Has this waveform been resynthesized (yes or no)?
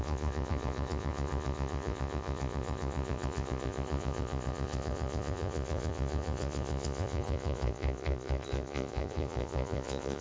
yes